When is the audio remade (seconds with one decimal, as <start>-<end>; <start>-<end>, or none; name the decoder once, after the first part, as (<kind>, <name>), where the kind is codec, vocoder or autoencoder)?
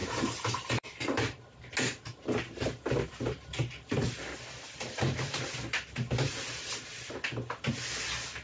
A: 0.0-1.6 (vocoder, BigVGAN v2)